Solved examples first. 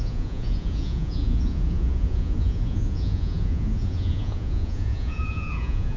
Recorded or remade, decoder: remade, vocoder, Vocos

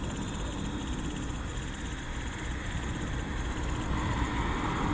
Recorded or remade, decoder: recorded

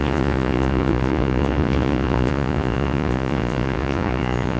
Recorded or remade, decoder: remade, vocoder, Vocos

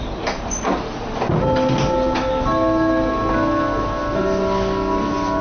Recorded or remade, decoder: recorded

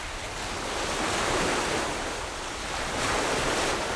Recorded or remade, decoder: recorded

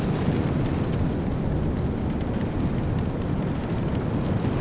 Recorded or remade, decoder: recorded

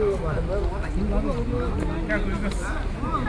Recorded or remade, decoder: recorded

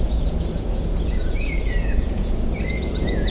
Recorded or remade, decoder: remade, vocoder, Vocos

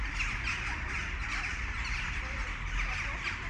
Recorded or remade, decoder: recorded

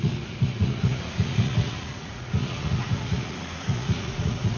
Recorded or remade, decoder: remade, vocoder, Vocos